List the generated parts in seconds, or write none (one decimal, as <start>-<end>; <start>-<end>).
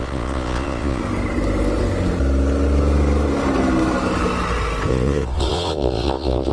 0.0-1.0; 4.9-6.5